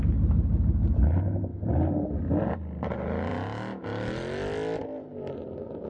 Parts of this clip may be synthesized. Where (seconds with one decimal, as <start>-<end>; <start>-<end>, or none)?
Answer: none